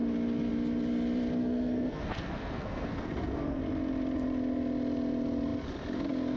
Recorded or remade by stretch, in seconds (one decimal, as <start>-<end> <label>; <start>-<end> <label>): 0.0-1.4 recorded; 1.4-3.6 remade; 3.6-6.4 recorded